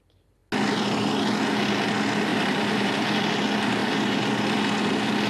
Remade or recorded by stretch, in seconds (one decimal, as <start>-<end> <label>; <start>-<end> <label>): 0.0-2.3 recorded; 2.3-2.9 remade; 2.9-3.8 recorded; 3.8-4.3 remade; 4.3-5.3 recorded